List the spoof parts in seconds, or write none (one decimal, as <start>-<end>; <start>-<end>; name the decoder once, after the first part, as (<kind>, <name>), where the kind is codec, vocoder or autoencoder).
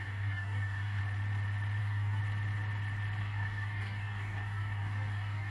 0.0-1.0 (codec, DAC); 1.8-2.2; 3.2-5.5